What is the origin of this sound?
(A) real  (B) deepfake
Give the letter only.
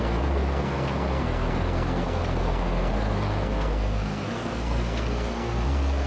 B